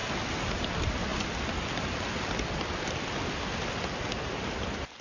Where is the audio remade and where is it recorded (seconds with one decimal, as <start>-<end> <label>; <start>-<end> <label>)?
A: 0.0-5.0 recorded